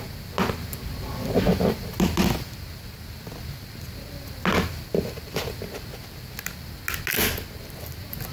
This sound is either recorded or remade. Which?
recorded